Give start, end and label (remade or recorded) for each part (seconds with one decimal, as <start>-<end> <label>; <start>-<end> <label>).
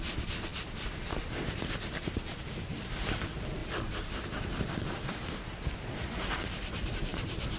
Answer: 0.0-3.6 recorded; 3.6-6.3 remade; 6.3-7.1 recorded; 7.1-7.6 remade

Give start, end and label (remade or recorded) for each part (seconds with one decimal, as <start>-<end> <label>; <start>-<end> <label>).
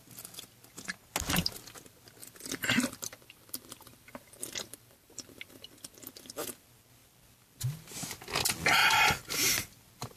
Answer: 0.0-2.2 recorded; 2.2-5.9 remade; 5.9-10.2 recorded